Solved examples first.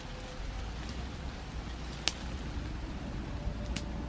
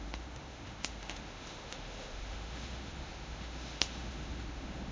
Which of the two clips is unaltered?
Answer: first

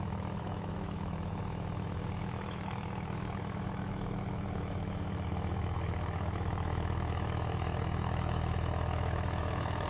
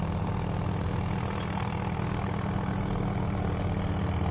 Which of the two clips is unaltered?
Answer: second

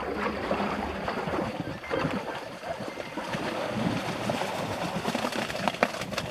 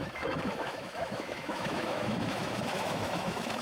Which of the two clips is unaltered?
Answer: first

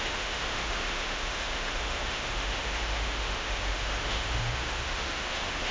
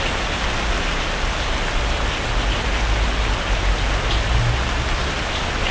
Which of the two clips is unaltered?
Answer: second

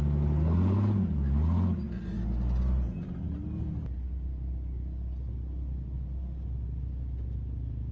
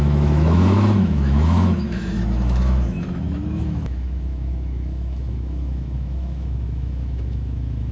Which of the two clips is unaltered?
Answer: first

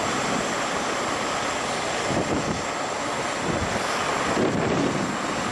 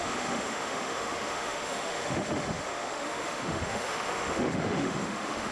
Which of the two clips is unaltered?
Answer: first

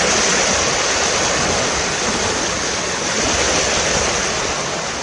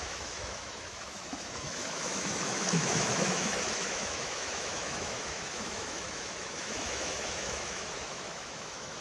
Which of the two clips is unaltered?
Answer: first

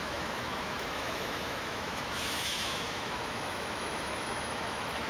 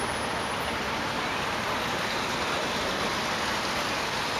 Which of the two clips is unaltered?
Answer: second